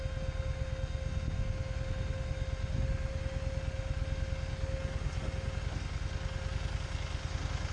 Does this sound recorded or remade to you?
recorded